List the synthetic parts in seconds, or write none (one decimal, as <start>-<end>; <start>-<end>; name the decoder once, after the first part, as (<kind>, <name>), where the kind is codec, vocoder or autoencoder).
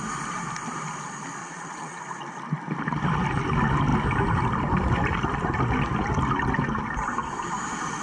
1.4-2.0 (vocoder, Vocos)